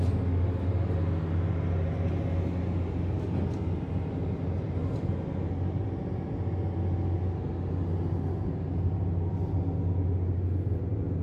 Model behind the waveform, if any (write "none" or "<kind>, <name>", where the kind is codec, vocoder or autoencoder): none